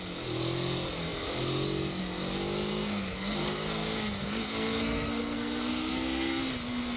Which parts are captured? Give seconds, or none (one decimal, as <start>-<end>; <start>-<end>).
0.0-2.7; 6.4-7.0